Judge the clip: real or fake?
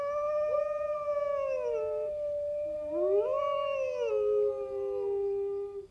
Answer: real